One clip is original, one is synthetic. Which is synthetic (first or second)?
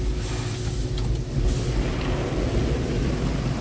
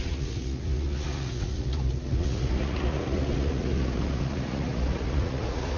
second